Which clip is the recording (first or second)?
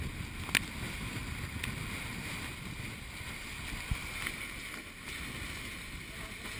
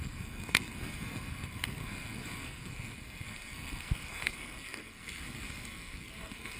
first